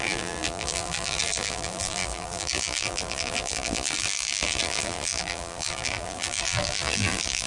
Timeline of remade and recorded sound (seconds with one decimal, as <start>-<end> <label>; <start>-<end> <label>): 0.0-7.5 remade